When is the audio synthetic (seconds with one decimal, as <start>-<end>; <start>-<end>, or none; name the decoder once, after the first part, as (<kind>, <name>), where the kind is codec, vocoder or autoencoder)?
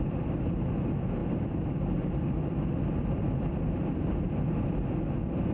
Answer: 1.2-4.5 (vocoder, BigVGAN v2)